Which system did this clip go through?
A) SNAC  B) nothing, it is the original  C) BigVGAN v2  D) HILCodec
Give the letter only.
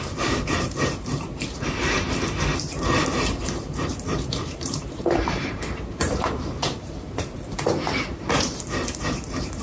C